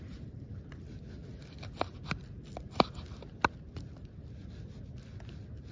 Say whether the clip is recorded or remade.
recorded